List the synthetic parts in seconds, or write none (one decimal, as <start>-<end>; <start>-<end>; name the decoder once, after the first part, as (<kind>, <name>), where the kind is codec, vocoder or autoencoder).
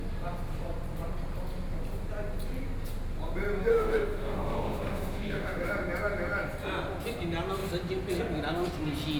3.7-5.7 (autoencoder, DAC-VAE)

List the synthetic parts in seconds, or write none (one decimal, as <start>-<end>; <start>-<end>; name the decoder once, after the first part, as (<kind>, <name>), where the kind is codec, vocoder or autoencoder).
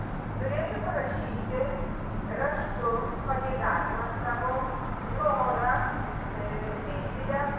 0.0-5.6 (vocoder, BigVGAN v2); 6.5-7.6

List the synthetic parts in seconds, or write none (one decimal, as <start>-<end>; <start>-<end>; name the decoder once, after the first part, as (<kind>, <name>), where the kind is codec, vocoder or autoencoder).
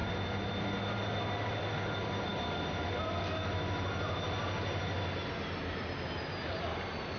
none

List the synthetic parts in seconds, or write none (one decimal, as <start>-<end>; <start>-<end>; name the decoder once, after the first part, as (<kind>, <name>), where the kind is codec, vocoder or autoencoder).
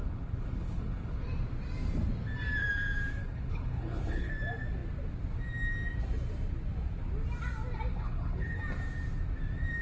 0.0-1.2 (codec, HILCodec); 3.2-4.3; 7.9-8.6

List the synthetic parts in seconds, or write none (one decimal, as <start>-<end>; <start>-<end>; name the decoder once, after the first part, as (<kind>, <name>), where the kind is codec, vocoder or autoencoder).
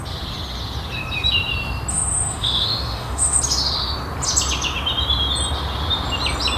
1.9-3.4 (autoencoder, DAC-VAE)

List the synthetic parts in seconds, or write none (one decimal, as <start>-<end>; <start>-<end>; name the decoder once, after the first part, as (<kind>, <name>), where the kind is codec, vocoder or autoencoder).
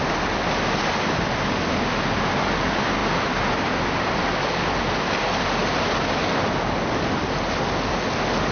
none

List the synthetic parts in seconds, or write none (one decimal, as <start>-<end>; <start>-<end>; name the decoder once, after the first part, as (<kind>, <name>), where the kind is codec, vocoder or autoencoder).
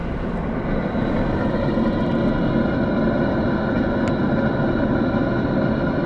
none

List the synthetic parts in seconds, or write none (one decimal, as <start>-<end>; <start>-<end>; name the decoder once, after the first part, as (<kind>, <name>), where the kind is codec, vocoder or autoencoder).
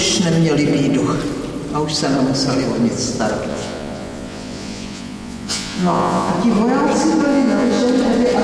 3.5-6.3 (vocoder, Vocos); 7.3-7.8